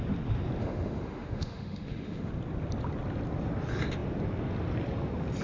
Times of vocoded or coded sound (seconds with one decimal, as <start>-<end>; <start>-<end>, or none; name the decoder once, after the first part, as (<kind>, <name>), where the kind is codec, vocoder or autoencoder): 0.6-2.3 (autoencoder, DAC-VAE)